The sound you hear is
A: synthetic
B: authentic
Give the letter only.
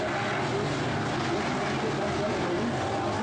B